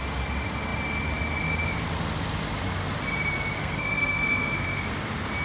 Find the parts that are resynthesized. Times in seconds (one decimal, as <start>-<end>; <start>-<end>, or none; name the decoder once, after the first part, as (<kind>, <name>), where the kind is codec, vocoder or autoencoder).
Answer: 3.6-4.9 (codec, SNAC)